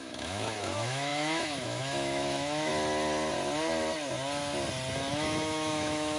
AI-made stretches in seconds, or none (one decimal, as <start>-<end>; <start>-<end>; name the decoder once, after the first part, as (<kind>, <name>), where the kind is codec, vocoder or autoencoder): 0.0-2.7 (autoencoder, DAC-VAE); 5.1-6.2